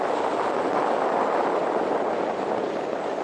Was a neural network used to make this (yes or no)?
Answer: no